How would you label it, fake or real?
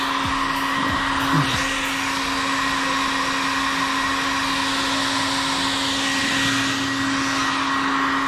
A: real